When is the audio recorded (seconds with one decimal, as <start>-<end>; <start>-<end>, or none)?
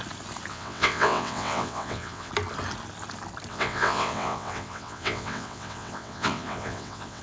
0.0-0.5; 2.3-3.5